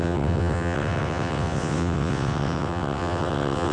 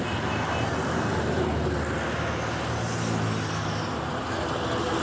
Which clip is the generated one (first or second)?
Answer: first